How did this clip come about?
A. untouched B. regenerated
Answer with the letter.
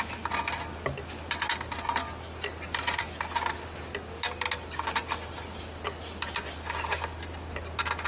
A